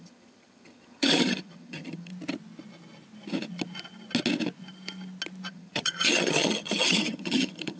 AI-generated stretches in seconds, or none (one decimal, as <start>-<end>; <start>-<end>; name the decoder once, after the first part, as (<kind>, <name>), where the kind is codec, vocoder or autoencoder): 0.0-2.1 (vocoder, HiFi-GAN); 5.5-7.8